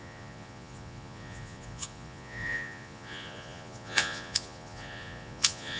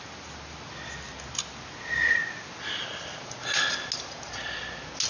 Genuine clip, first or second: second